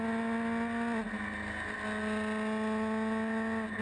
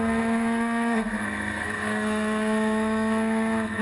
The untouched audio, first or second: first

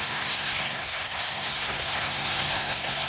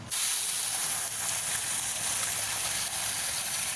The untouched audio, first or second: second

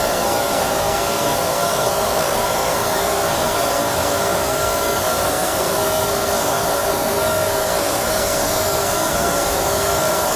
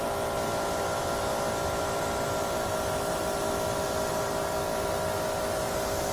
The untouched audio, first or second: second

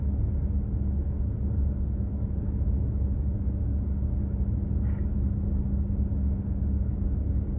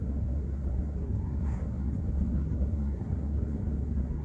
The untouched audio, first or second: first